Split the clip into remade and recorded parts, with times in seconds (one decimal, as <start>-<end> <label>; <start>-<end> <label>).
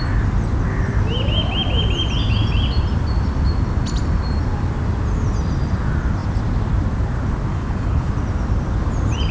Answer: 0.0-7.5 recorded; 7.5-8.1 remade; 8.1-9.3 recorded